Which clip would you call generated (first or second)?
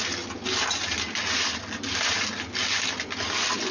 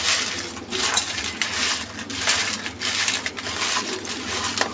second